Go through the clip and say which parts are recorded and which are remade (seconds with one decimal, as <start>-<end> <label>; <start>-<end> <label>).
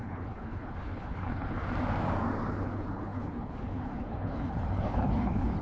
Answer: 0.0-1.6 remade; 1.6-2.5 recorded; 2.5-5.6 remade